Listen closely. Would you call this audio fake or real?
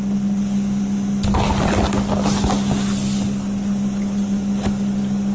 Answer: real